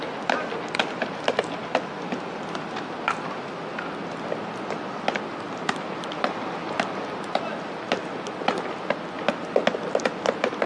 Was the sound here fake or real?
real